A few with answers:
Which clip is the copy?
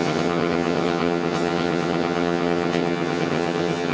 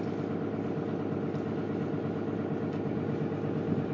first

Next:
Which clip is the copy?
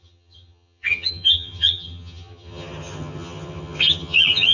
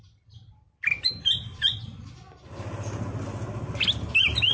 first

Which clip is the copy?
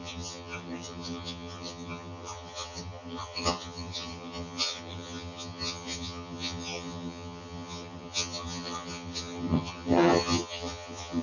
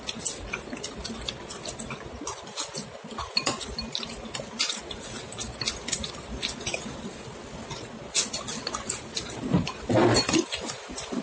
first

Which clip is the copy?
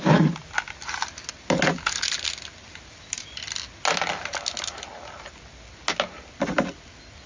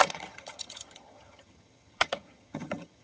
second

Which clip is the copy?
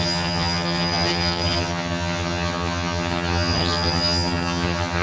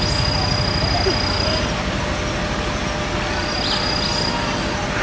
first